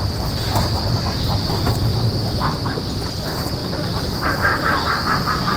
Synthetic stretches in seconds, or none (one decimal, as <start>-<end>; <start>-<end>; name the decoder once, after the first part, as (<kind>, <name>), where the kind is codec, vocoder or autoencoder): 0.5-1.1 (vocoder, BigVGAN v2)